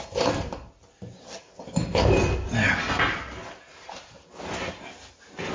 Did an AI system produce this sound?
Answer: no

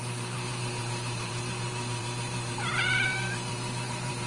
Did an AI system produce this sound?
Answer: yes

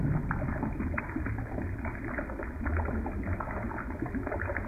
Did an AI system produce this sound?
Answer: no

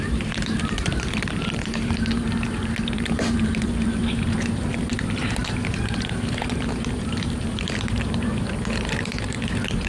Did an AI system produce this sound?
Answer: yes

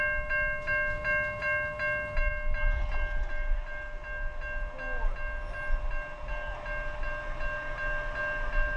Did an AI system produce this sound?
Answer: no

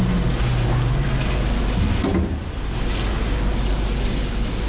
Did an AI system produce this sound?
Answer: no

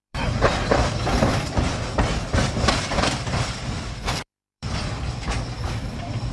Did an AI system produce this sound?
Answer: yes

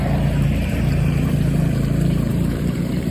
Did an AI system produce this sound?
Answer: yes